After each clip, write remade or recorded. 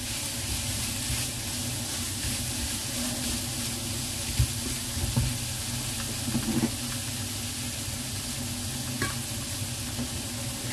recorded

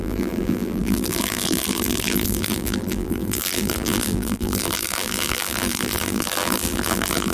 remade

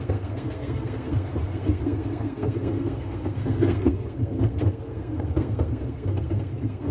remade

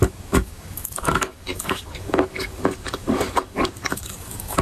remade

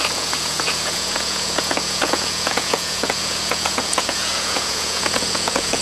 remade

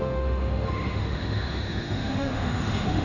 remade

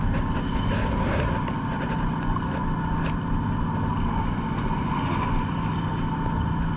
recorded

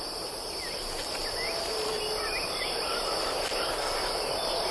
remade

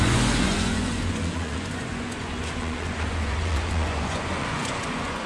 remade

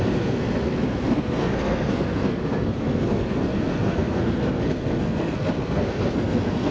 remade